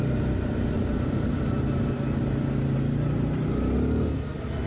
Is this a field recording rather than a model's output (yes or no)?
yes